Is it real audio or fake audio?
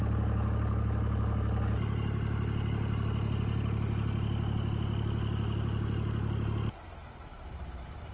real